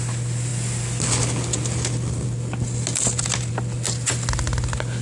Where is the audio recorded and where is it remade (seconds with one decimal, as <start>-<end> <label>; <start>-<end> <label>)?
0.0-5.0 recorded

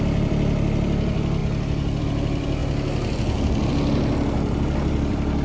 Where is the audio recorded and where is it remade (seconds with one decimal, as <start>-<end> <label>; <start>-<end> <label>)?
0.0-1.4 remade; 1.4-2.0 recorded; 2.0-2.6 remade; 2.6-3.7 recorded; 3.7-5.4 remade

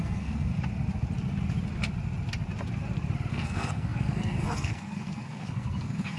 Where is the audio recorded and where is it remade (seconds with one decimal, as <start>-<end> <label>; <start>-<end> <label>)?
0.0-0.5 remade; 0.5-3.3 recorded; 3.3-6.2 remade

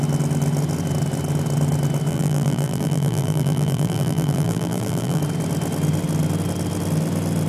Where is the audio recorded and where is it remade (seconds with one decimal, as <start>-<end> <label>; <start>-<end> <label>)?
0.0-2.1 recorded; 2.1-5.2 remade; 5.2-7.5 recorded

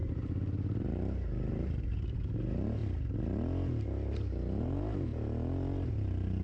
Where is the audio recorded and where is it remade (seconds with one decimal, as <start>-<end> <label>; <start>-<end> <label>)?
0.0-2.8 remade; 2.8-4.6 recorded; 4.6-5.1 remade; 5.1-5.9 recorded; 5.9-6.4 remade

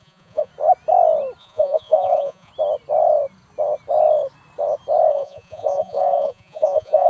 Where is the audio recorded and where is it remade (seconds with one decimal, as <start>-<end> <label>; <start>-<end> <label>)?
0.0-0.5 remade; 0.5-1.4 recorded; 1.4-2.5 remade; 2.5-5.1 recorded; 5.1-7.1 remade

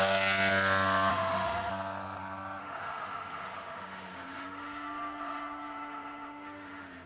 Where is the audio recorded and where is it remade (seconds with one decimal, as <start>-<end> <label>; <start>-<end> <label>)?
0.0-1.1 recorded; 1.1-1.7 remade; 1.7-2.6 recorded; 2.6-7.1 remade

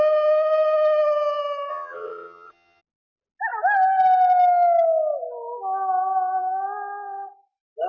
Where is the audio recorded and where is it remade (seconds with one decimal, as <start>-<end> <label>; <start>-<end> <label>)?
0.0-1.7 recorded; 1.7-2.8 remade; 2.8-7.9 recorded